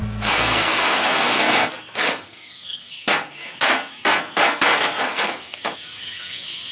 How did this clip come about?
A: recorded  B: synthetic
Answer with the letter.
B